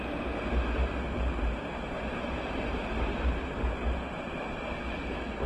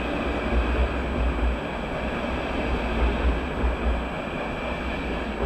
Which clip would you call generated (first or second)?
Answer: first